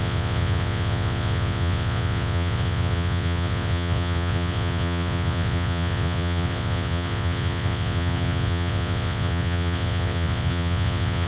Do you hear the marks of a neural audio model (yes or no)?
yes